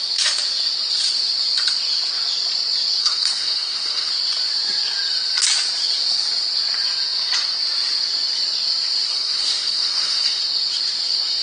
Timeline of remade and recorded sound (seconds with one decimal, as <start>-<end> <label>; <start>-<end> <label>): 0.0-3.0 recorded; 3.0-4.1 remade; 4.1-9.1 recorded; 9.1-10.4 remade; 10.4-11.4 recorded